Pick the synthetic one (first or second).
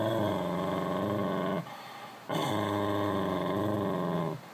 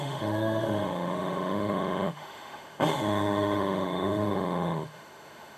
second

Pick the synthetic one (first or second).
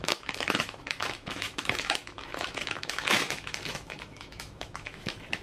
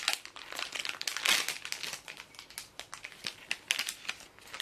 first